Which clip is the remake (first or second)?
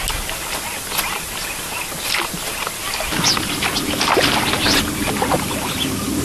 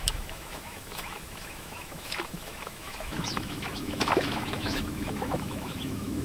second